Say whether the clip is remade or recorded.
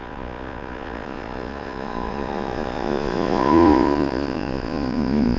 remade